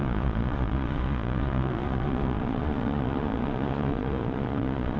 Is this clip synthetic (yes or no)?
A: yes